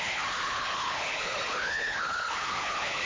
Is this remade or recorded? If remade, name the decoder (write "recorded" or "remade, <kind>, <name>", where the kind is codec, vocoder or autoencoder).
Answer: remade, codec, HILCodec